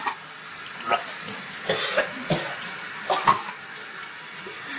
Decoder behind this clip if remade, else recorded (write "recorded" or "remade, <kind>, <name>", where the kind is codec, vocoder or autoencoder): remade, vocoder, BigVGAN v2